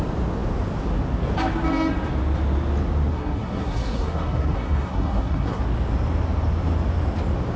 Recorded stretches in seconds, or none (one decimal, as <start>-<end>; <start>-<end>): 0.0-3.1; 5.6-7.6